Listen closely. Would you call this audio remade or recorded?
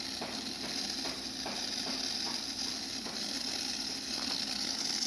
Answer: recorded